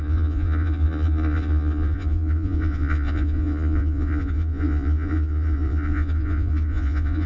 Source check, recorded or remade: remade